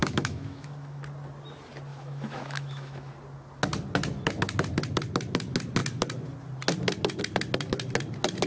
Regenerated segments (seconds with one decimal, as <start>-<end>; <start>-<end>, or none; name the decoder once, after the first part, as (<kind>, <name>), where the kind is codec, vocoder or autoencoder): 0.0-1.0 (autoencoder, DAC-VAE); 1.9-3.1